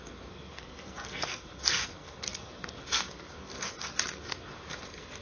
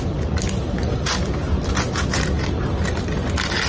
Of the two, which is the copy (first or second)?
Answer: first